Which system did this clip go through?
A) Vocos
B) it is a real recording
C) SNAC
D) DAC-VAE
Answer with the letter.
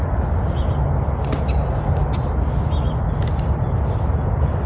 B